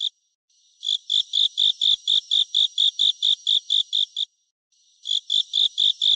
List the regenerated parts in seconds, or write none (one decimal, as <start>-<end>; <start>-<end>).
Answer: none